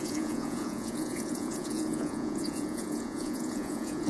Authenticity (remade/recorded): remade